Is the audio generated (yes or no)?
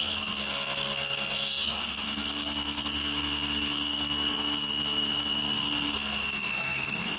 yes